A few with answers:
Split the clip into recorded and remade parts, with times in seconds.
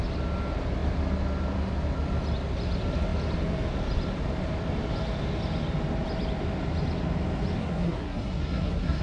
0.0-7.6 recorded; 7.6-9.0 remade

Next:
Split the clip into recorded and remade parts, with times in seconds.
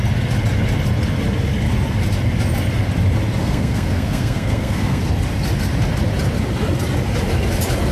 0.0-3.4 recorded; 3.4-5.0 remade; 5.0-7.9 recorded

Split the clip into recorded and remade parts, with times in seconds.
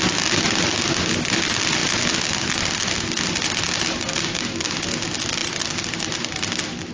0.0-6.9 recorded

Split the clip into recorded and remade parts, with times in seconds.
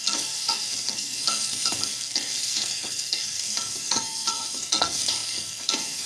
0.0-6.1 remade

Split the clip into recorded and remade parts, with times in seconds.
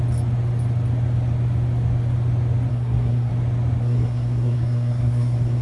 0.0-2.7 recorded; 2.7-3.3 remade; 3.3-3.8 recorded; 3.8-5.6 remade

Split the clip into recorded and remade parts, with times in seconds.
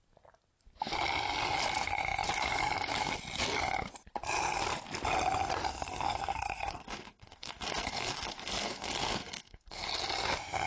0.0-5.7 recorded; 5.7-10.1 remade; 10.1-10.7 recorded